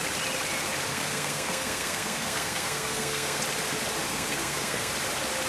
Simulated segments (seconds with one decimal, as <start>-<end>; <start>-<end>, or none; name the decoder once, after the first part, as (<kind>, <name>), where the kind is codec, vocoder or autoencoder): 0.9-3.4 (codec, SNAC); 4.1-4.9